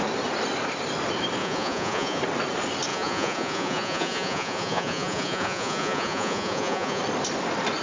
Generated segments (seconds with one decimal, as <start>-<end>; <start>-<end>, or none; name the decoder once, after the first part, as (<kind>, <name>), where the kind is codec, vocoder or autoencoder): 1.4-2.2 (vocoder, Vocos); 2.9-7.0